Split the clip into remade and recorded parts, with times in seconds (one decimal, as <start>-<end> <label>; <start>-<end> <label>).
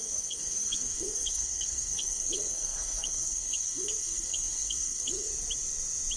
0.0-5.3 remade; 5.3-6.2 recorded